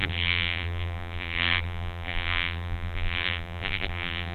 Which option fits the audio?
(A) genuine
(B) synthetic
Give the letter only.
B